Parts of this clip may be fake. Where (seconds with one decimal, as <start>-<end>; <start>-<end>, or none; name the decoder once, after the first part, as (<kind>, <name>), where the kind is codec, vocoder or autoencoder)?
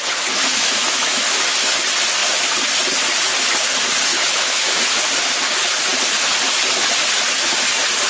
0.5-1.7 (autoencoder, DAC-VAE); 4.1-4.8